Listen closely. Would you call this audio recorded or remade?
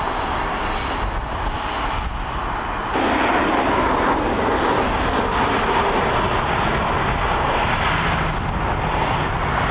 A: recorded